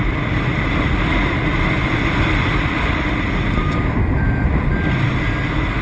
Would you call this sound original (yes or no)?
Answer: yes